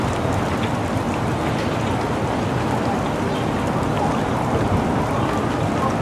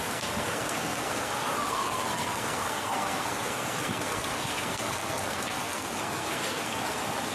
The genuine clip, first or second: first